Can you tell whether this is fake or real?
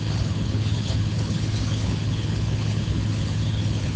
fake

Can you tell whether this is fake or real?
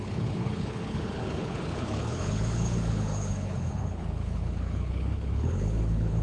fake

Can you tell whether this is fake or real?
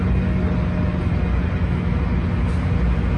real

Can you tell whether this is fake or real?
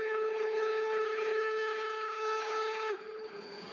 fake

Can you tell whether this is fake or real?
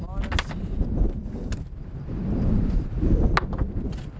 real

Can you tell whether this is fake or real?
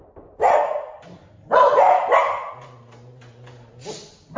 real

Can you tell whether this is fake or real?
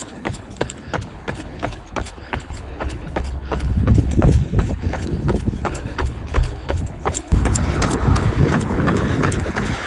fake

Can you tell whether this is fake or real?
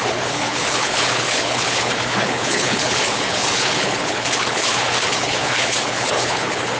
fake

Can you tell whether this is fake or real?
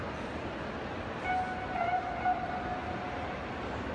real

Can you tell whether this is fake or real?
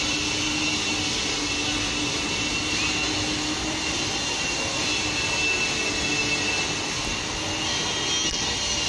real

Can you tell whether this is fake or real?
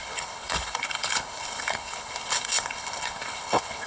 fake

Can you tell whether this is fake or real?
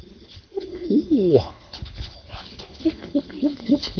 fake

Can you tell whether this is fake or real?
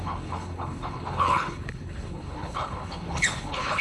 fake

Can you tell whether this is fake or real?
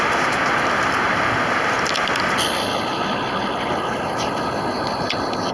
real